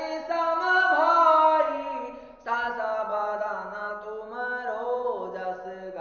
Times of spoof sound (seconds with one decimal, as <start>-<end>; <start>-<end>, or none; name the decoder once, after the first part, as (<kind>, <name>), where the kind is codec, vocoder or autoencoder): 3.1-3.9 (vocoder, Vocos)

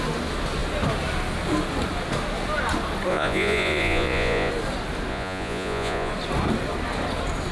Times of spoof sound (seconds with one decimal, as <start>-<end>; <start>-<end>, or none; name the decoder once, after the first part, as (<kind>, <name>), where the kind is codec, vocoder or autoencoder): 3.1-4.5 (vocoder, Vocos); 5.1-6.1

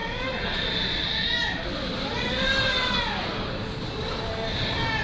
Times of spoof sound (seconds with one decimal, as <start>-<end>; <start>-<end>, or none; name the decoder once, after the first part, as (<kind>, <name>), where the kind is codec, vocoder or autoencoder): none

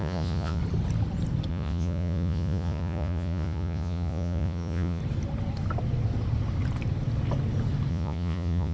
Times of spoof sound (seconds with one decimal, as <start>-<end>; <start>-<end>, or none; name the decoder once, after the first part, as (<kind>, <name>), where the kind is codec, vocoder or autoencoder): 0.0-0.6 (vocoder, Vocos); 1.5-5.0; 7.9-8.7